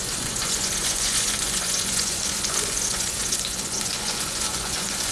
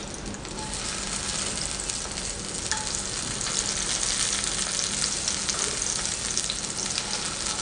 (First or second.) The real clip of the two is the second